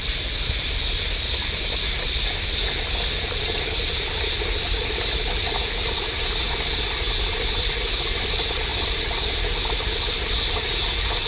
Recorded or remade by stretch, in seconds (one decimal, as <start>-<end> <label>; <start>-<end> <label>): 0.0-11.3 recorded